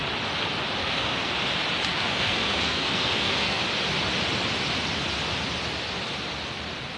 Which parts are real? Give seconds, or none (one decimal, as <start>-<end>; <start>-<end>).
0.0-0.8; 1.3-1.9; 3.6-7.0